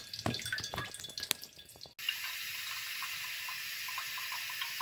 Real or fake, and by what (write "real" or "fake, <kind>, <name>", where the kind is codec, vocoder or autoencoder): real